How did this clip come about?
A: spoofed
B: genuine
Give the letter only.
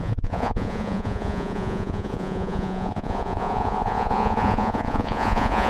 A